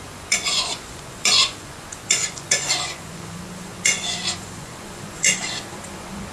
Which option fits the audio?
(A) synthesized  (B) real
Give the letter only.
A